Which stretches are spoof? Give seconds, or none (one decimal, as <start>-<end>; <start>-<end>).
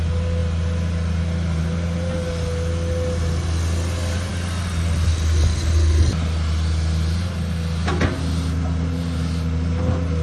none